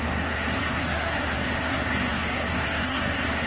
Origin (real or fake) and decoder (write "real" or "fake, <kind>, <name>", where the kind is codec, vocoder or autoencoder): fake, codec, SNAC